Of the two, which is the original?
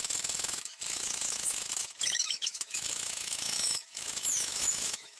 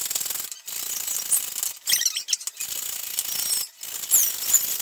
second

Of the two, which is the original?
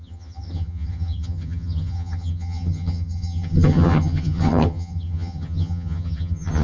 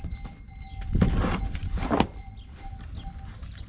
second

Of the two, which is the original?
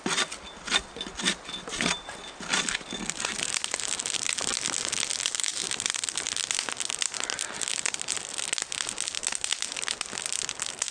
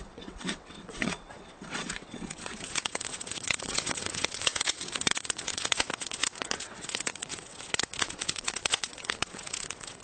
first